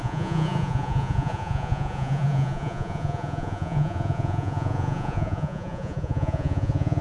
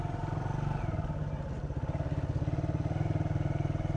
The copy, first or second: first